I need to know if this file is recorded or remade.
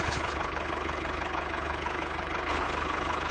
remade